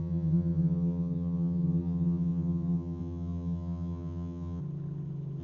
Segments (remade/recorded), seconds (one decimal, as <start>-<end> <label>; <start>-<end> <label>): 0.0-4.6 remade; 4.6-5.4 recorded